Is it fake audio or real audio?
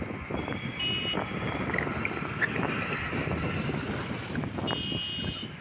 real